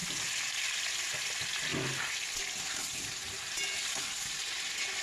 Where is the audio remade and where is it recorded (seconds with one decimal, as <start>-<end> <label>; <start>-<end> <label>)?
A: 0.0-5.0 recorded